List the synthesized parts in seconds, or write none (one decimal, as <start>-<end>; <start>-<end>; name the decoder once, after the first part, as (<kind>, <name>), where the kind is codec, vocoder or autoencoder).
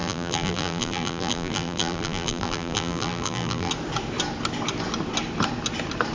0.0-3.7 (vocoder, BigVGAN v2)